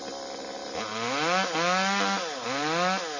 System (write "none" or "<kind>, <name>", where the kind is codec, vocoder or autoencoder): none